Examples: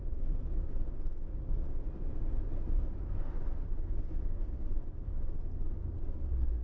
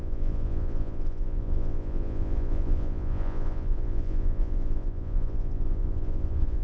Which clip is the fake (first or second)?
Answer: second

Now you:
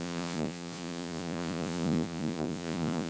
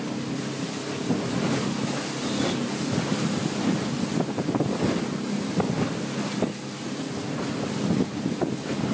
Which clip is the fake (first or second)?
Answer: first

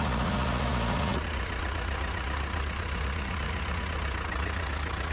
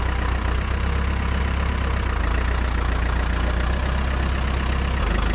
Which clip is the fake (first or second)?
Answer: first